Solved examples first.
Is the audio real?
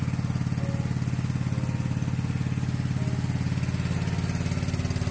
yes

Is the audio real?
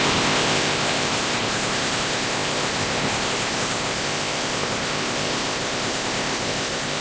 no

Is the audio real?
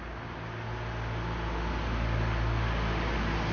yes